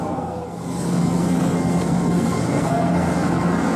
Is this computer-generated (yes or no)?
yes